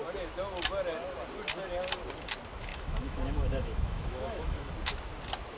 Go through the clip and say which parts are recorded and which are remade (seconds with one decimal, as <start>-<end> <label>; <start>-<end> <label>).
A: 0.0-2.7 recorded; 2.7-4.7 remade; 4.7-5.6 recorded